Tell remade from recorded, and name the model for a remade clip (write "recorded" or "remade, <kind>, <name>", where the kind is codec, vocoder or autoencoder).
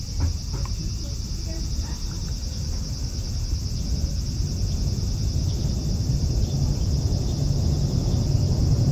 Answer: recorded